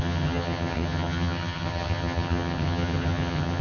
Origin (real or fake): fake